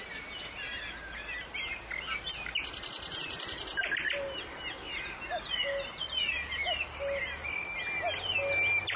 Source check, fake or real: real